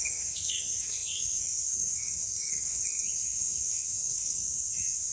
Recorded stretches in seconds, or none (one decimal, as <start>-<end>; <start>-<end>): none